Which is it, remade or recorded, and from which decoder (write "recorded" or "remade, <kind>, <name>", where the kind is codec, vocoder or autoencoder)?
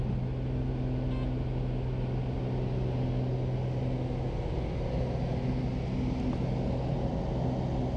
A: recorded